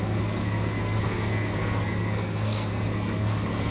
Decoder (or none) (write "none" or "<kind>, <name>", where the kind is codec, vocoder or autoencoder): codec, SNAC